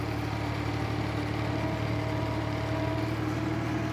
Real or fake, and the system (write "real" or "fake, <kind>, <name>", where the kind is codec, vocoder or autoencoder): real